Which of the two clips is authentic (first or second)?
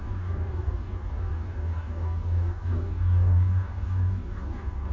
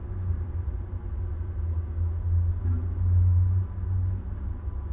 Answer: second